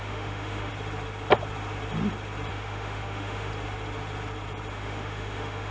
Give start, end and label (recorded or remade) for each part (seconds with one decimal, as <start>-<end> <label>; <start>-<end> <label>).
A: 0.0-0.7 remade; 0.7-2.5 recorded; 2.5-3.5 remade; 3.5-4.7 recorded; 4.7-5.7 remade